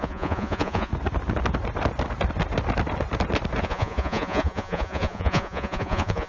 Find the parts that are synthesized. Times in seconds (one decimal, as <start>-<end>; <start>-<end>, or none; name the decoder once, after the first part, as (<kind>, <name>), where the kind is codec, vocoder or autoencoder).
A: 0.0-0.9 (vocoder, Vocos); 3.6-6.3